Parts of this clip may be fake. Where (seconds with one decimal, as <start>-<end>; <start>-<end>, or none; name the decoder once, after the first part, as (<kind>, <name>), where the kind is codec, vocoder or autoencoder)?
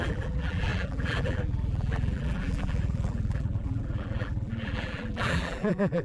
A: 0.0-6.0 (vocoder, BigVGAN v2)